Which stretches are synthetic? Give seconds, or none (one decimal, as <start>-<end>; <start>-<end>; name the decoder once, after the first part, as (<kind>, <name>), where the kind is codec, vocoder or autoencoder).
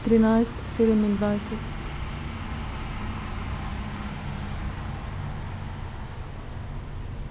none